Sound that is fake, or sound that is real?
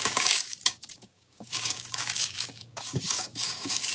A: fake